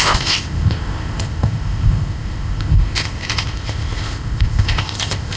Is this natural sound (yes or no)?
no